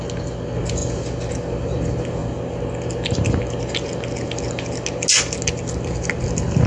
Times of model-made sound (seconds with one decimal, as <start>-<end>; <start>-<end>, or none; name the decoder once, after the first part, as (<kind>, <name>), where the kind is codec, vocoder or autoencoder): none